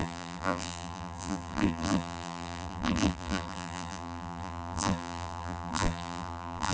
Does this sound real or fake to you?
fake